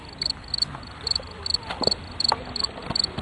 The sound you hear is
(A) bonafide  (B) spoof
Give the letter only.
B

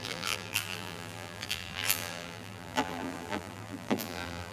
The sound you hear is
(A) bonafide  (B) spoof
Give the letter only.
B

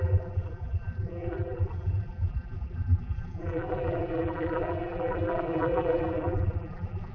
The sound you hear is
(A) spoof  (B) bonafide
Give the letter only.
A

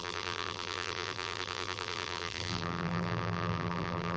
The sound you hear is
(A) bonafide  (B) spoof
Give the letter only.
B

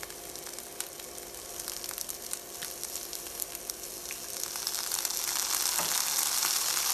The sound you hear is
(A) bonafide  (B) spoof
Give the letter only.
A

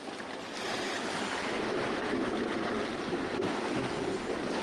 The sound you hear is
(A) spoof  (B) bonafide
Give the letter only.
B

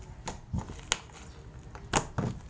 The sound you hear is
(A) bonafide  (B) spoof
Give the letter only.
A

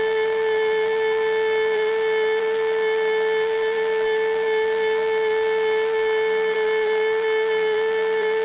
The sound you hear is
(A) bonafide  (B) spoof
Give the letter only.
B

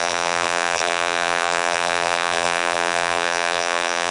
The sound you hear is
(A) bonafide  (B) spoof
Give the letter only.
B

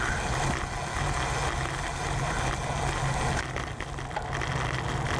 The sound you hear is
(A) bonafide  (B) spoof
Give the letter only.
A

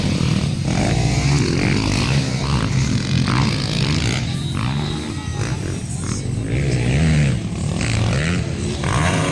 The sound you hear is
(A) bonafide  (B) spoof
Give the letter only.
A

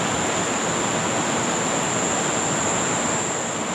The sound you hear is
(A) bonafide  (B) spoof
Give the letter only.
A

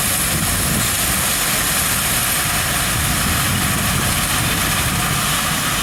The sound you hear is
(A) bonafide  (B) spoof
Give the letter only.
A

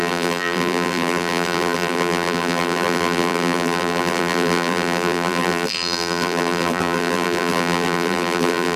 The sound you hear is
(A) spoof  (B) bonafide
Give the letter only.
A